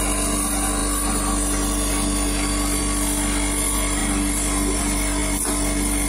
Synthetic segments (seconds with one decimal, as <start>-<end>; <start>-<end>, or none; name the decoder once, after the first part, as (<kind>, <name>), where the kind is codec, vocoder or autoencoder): 0.8-2.8 (vocoder, BigVGAN v2); 4.0-4.8